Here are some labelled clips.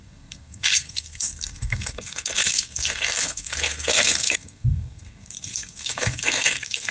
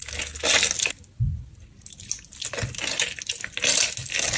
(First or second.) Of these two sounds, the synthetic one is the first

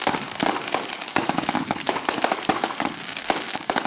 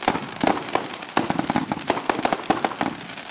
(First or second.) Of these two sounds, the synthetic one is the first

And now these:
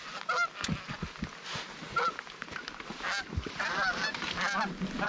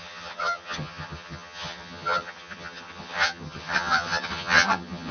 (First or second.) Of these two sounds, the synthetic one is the second